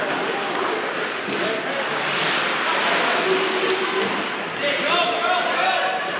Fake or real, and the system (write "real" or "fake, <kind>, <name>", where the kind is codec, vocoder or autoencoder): real